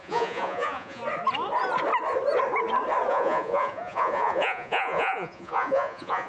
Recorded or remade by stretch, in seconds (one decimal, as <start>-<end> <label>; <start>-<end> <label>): 0.0-1.0 remade; 1.0-3.1 recorded; 3.1-6.3 remade